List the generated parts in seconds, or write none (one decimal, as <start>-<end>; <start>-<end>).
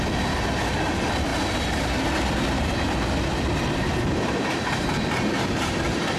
none